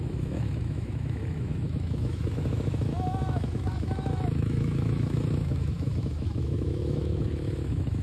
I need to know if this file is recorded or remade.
remade